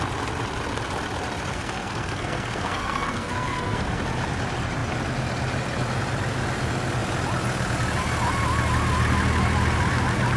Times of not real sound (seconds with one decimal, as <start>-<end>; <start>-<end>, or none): 1.5-4.0

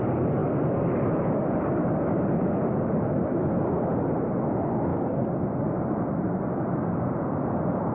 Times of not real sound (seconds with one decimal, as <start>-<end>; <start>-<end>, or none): none

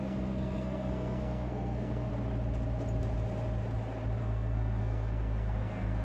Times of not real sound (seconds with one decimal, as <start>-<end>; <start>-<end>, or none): 0.0-2.1; 4.2-6.0

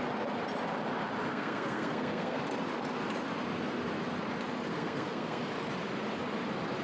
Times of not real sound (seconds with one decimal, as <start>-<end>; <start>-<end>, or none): 1.3-2.4; 4.7-5.4

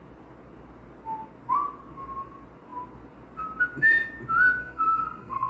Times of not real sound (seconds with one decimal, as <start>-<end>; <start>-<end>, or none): 4.6-5.5